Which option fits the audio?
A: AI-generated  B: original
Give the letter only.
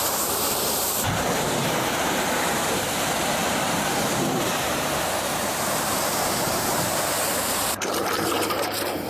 A